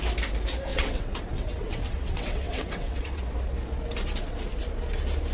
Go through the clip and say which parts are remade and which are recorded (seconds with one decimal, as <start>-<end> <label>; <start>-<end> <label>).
0.0-0.7 recorded; 0.7-3.2 remade; 3.2-5.3 recorded